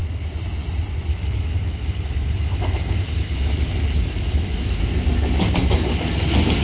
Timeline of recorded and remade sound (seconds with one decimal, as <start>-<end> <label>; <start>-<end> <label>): 0.0-1.1 recorded; 1.1-4.8 remade; 4.8-5.6 recorded; 5.6-6.1 remade; 6.1-6.6 recorded